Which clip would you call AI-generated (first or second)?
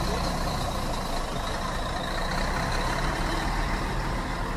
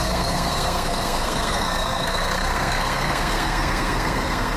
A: second